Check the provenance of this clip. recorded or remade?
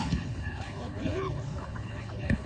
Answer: remade